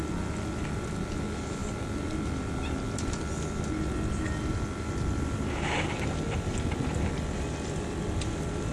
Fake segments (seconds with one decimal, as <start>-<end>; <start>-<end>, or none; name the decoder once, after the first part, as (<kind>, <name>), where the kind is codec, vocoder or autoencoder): none